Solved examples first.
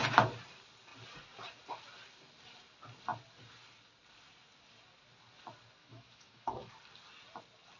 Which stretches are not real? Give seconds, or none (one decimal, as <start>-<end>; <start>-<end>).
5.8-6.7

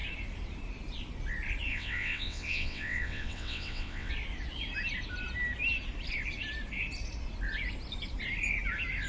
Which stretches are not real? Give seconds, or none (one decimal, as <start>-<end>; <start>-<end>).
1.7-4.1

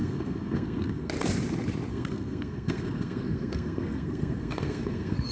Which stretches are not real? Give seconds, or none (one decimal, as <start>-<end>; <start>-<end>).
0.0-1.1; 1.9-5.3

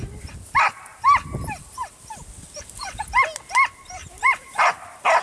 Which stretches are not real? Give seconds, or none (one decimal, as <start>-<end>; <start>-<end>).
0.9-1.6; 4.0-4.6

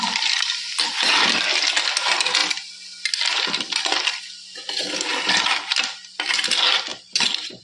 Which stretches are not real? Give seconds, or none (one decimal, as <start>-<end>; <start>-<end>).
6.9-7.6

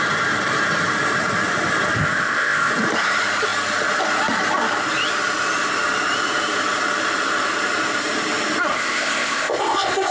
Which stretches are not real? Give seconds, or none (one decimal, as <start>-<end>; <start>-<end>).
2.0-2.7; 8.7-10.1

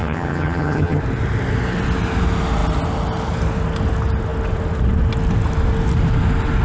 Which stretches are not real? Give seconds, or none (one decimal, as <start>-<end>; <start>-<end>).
0.0-1.0

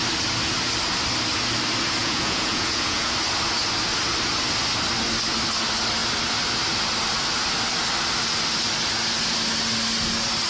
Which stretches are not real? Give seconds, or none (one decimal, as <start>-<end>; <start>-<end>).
2.0-3.1